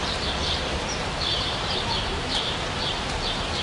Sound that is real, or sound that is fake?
fake